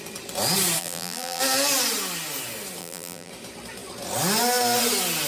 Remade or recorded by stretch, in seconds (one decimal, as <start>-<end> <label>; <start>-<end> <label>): 0.0-0.8 recorded; 0.8-1.4 remade; 1.4-2.8 recorded; 2.8-3.3 remade; 3.3-5.3 recorded